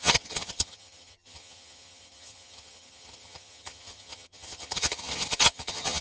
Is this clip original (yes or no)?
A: no